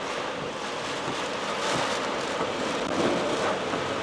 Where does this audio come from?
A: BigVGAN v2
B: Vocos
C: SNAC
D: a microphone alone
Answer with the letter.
D